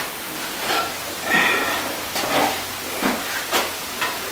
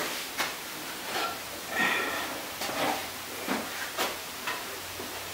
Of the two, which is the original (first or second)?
first